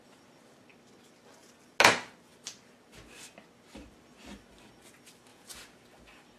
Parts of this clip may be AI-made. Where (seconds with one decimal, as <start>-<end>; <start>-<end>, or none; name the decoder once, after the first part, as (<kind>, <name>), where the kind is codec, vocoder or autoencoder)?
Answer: 5.3-5.8 (vocoder, Vocos)